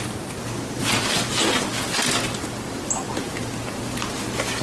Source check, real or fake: real